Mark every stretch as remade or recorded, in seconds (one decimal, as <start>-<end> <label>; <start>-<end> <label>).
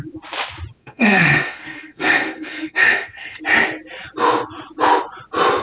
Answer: 0.0-0.8 recorded; 0.8-3.4 remade; 3.4-5.6 recorded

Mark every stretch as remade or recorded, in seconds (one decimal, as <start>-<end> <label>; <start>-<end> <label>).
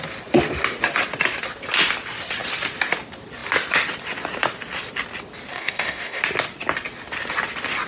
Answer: 0.0-5.5 recorded; 5.5-6.2 remade; 6.2-7.9 recorded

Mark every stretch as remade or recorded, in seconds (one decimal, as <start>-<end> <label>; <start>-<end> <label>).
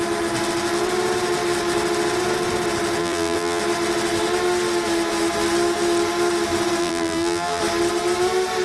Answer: 0.0-3.0 recorded; 3.0-3.6 remade; 3.6-6.8 recorded; 6.8-7.6 remade; 7.6-8.6 recorded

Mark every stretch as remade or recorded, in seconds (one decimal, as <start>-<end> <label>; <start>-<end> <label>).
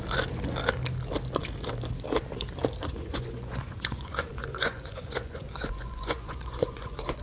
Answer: 0.0-2.8 recorded; 2.8-7.2 remade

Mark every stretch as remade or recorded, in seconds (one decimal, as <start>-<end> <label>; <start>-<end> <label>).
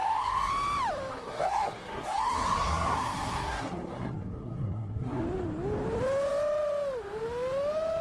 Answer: 0.0-0.5 remade; 0.5-1.1 recorded; 1.1-5.2 remade; 5.2-8.0 recorded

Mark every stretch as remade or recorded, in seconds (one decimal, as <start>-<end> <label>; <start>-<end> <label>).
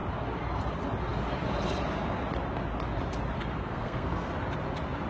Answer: 0.0-3.6 recorded; 3.6-4.3 remade; 4.3-5.1 recorded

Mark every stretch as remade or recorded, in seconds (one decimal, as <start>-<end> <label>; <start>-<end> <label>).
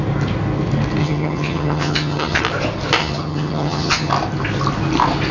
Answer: 0.0-1.0 recorded; 1.0-2.4 remade; 2.4-3.0 recorded; 3.0-4.1 remade; 4.1-5.3 recorded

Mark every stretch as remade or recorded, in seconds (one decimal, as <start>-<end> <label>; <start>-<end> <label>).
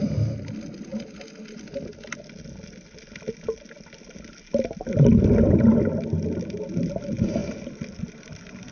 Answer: 0.0-7.4 recorded; 7.4-8.7 remade